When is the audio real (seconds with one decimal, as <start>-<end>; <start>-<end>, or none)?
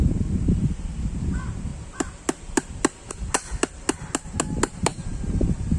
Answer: 0.0-4.9